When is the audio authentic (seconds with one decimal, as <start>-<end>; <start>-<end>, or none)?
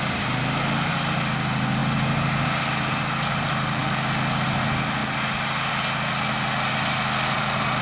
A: 0.0-7.8